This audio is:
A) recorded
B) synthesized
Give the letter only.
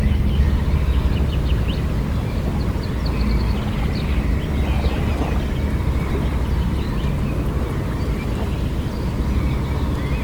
A